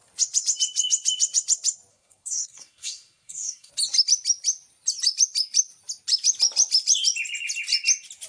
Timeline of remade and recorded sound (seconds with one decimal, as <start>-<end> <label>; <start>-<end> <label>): 0.0-1.9 recorded; 1.9-3.7 remade; 3.7-8.3 recorded